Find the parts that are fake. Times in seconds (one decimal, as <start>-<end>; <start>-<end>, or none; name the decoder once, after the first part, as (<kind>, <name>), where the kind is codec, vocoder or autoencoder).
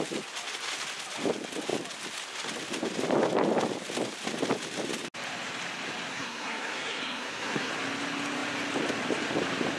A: 6.1-7.7 (codec, SNAC)